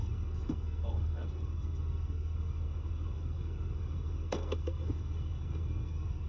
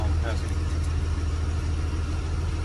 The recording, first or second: second